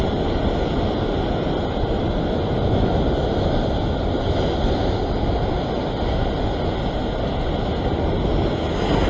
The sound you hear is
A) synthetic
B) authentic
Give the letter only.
B